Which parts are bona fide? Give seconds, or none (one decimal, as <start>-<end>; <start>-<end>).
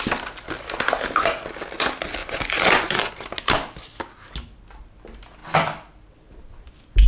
0.0-2.2; 3.1-7.1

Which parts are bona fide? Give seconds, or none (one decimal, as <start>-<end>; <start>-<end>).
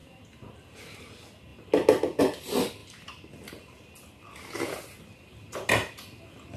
0.0-6.6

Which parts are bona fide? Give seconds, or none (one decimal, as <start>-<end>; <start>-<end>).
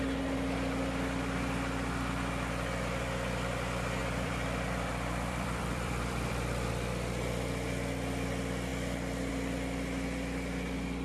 0.0-4.0; 6.7-11.0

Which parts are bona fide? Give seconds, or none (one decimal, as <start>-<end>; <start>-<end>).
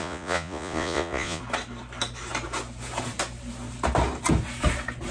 1.4-5.1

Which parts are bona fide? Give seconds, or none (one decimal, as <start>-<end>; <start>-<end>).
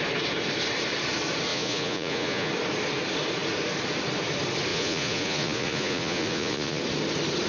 0.0-1.5; 2.5-4.7; 6.8-7.5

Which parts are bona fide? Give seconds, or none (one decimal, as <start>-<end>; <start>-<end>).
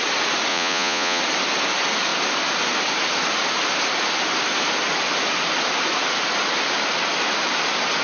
0.0-0.5; 1.2-8.0